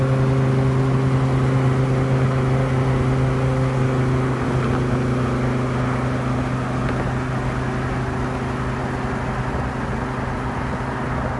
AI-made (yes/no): no